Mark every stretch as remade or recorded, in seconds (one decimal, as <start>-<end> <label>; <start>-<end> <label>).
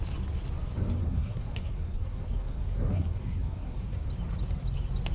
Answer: 0.0-1.0 recorded; 1.0-4.1 remade; 4.1-5.1 recorded